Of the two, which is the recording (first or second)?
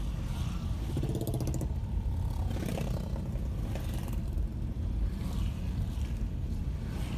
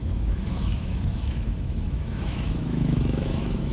first